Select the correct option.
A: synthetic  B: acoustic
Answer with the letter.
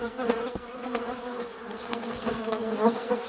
A